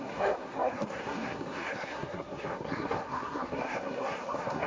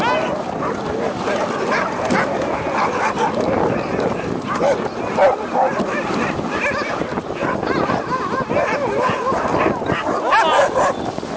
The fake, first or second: first